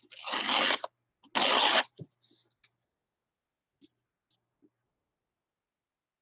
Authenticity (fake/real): real